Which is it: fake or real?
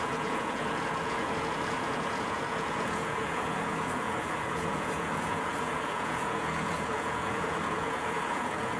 fake